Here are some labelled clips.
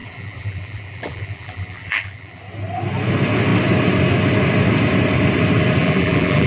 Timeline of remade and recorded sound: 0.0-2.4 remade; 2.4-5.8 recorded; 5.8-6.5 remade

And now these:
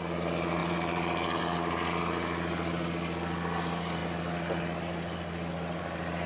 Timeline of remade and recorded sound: 0.0-0.6 recorded; 0.6-1.4 remade; 1.4-6.3 recorded

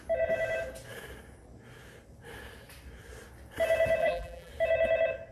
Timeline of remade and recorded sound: 0.0-4.0 recorded; 4.0-4.5 remade; 4.5-5.3 recorded

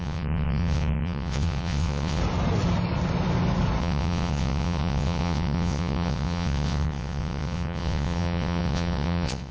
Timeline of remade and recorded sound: 0.0-2.2 remade; 2.2-3.8 recorded; 3.8-9.5 remade